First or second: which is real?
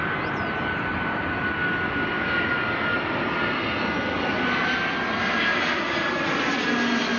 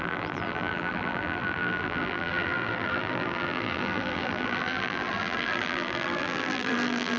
first